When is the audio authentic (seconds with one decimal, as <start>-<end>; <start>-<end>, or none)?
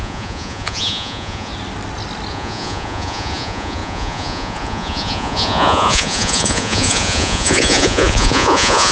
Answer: 1.5-2.3